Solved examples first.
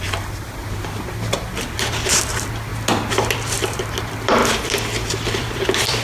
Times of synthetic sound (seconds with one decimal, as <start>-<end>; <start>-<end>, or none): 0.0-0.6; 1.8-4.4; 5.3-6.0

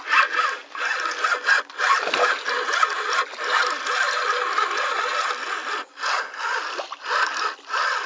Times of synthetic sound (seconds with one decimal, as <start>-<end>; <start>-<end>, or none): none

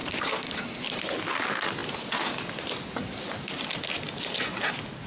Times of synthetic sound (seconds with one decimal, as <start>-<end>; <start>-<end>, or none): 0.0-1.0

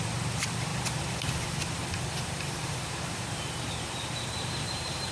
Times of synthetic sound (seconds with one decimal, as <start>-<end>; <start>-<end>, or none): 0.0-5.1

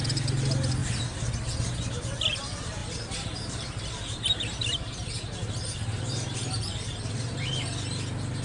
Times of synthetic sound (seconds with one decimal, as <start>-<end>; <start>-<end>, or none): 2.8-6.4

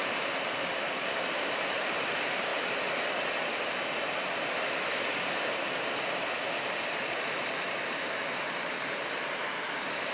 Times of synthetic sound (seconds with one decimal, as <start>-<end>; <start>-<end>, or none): 0.0-2.5; 7.3-10.1

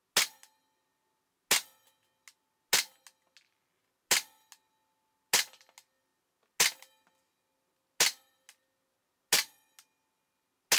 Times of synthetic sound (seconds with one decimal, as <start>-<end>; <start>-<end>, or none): none